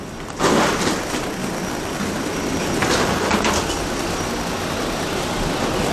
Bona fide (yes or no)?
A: yes